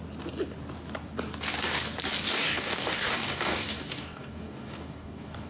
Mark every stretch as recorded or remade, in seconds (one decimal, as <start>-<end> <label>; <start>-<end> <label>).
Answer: 0.0-2.3 recorded; 2.3-5.5 remade